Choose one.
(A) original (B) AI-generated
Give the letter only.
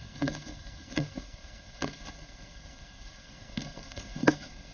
B